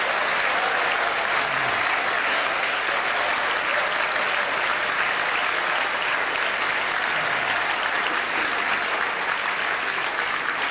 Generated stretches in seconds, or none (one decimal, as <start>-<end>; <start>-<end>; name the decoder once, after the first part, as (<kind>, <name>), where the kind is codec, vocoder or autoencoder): 2.3-2.8 (codec, SNAC)